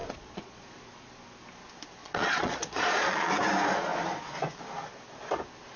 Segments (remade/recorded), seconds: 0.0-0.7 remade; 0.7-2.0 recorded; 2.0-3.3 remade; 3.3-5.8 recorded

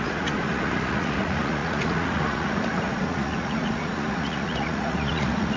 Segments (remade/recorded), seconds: 0.0-5.6 remade

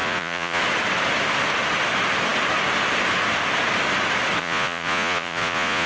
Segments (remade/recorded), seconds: 0.0-0.6 remade; 0.6-4.4 recorded; 4.4-5.9 remade

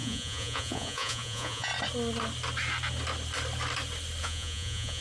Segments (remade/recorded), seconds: 0.0-1.7 remade; 1.7-4.2 recorded; 4.2-5.0 remade

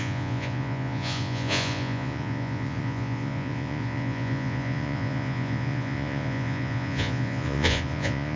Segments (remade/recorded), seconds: 0.0-8.4 remade

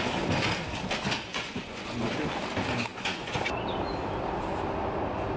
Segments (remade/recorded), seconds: 0.0-1.3 recorded; 1.3-2.0 remade; 2.0-2.9 recorded; 2.9-3.5 remade; 3.5-5.4 recorded

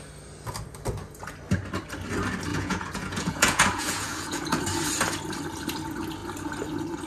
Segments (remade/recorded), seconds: 0.0-2.5 recorded; 2.5-4.6 remade; 4.6-7.1 recorded

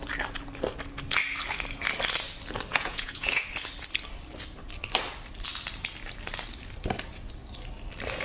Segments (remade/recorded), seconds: 0.0-2.7 recorded; 2.7-3.4 remade; 3.4-8.2 recorded